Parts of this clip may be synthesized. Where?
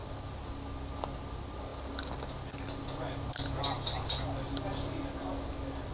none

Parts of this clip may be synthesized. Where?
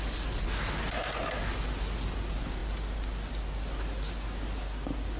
none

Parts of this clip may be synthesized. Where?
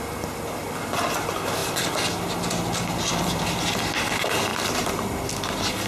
none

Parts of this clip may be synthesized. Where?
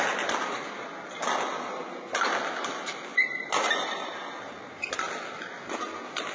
none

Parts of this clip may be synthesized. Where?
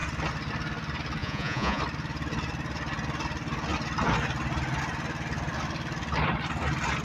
1.2-1.8 (vocoder, Vocos)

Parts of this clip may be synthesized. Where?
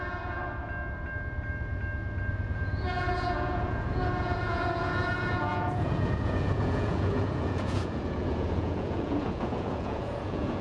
0.0-0.4 (vocoder, Vocos); 2.3-10.6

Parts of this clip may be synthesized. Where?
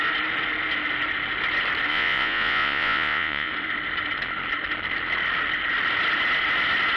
1.9-3.5 (vocoder, Vocos)